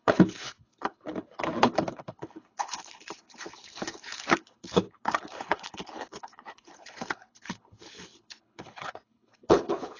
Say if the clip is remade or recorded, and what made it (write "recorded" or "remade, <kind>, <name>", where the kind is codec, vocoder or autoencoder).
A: remade, codec, HILCodec